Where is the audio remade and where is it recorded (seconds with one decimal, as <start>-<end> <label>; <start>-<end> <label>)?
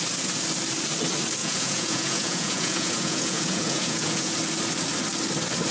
0.0-1.4 recorded; 1.4-4.3 remade; 4.3-5.7 recorded